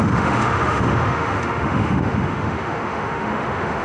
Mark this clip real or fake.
fake